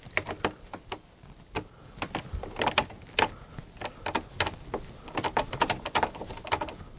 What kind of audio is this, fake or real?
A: real